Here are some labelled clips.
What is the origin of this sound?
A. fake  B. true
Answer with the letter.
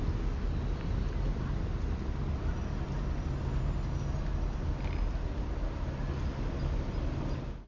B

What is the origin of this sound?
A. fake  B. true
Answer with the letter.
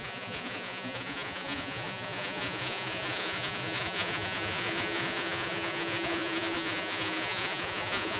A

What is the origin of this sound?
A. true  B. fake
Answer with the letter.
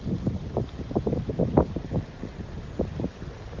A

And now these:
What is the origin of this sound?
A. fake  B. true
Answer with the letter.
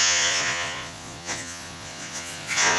A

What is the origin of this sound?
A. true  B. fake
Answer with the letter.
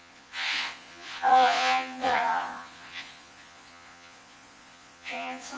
B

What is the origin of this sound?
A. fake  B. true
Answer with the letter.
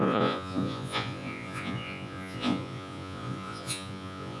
A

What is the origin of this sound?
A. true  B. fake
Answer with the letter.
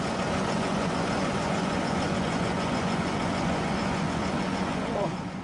B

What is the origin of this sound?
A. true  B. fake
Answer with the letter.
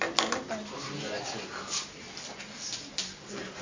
A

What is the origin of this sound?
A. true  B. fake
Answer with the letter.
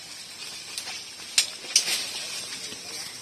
A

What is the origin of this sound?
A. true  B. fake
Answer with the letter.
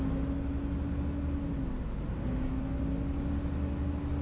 A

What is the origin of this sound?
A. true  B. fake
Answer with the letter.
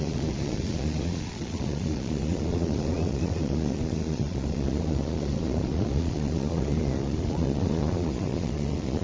B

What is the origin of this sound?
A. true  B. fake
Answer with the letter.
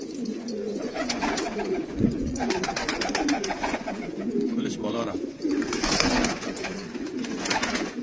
B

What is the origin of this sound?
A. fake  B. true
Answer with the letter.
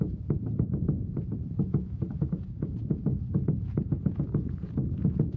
A